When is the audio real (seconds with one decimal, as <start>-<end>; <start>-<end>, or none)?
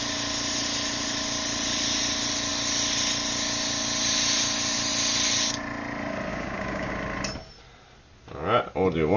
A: 0.0-6.3; 6.9-9.2